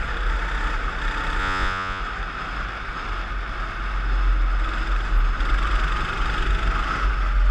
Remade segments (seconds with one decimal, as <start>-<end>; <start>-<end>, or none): 1.4-2.0